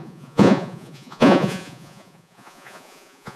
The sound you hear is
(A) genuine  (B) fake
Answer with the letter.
B